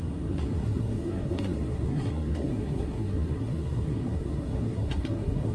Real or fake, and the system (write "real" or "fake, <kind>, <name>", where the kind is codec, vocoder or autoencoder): fake, codec, SNAC